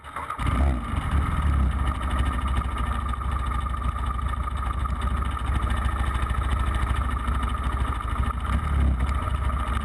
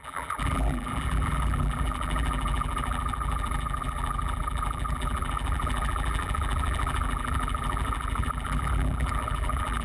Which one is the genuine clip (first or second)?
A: first